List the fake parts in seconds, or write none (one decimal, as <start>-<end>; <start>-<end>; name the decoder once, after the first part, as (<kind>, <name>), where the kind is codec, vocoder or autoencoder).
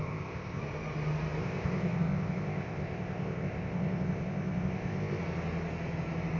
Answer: 0.0-0.6 (codec, ZipCodec); 1.4-5.2